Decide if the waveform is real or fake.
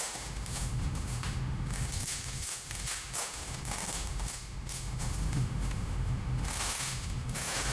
fake